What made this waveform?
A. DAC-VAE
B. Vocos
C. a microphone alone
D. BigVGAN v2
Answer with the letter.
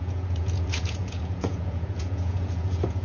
B